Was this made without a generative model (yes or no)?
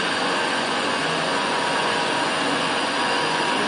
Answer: no